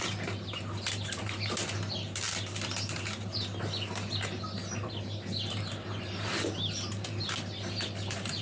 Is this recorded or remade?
recorded